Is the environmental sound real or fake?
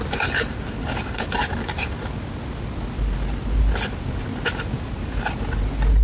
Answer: real